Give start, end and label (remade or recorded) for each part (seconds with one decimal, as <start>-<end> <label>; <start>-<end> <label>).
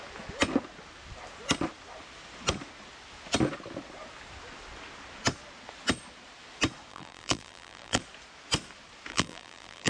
0.0-6.9 recorded; 6.9-8.0 remade; 8.0-9.1 recorded; 9.1-9.9 remade